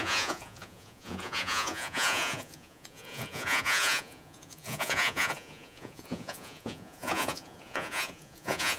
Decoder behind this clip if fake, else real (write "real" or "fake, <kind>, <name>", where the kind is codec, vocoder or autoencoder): fake, vocoder, Vocos